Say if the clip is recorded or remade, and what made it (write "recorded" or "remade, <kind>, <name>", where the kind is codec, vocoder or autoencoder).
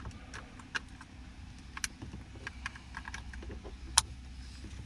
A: recorded